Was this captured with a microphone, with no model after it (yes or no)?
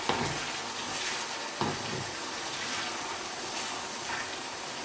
yes